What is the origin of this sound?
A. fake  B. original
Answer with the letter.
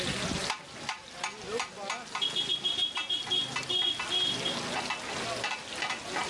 B